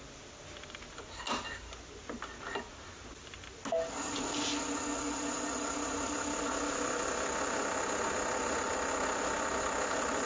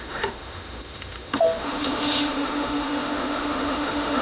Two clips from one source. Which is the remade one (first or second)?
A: second